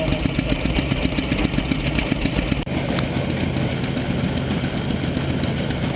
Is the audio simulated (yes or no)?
no